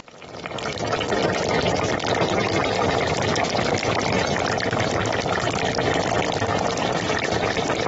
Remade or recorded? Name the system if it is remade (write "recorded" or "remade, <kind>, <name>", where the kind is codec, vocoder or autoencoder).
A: recorded